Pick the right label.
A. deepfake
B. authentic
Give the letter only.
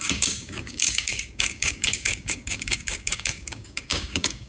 A